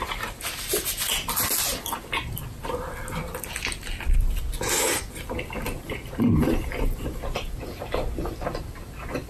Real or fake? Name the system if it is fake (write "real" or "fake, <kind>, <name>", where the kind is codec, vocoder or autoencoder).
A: real